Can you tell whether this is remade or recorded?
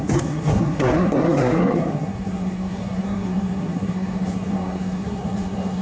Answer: remade